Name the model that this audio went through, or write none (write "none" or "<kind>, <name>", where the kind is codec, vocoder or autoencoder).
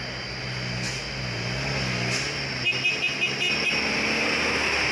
none